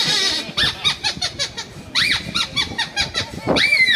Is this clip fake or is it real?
real